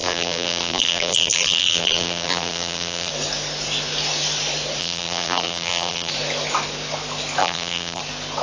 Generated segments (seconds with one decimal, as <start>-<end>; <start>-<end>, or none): 0.0-3.1; 4.8-6.1; 7.4-8.0